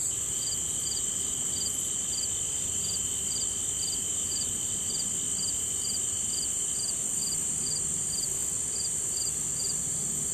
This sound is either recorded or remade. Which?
recorded